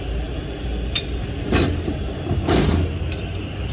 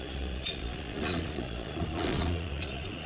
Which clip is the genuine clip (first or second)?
first